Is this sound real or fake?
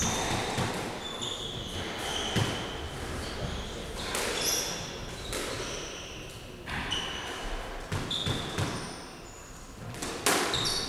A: real